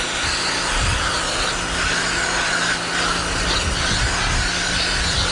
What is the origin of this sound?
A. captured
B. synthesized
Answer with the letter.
A